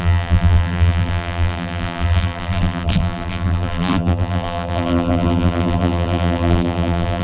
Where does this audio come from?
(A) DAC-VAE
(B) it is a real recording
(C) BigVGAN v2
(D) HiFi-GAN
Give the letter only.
C